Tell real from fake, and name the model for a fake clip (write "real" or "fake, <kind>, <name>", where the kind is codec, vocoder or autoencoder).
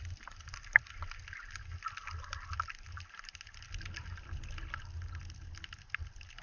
real